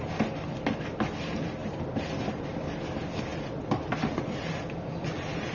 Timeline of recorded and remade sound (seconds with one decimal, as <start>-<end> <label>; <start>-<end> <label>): 0.0-3.3 recorded; 3.3-4.6 remade; 4.6-5.5 recorded